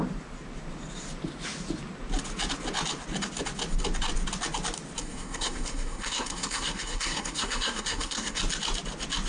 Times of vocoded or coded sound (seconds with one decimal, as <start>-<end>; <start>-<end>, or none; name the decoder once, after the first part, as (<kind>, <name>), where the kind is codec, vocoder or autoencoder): 5.0-8.4 (codec, SNAC)